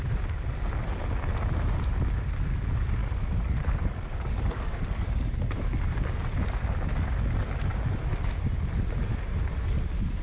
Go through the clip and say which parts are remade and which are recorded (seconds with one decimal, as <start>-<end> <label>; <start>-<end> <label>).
0.0-3.0 recorded; 3.0-5.8 remade; 5.8-10.2 recorded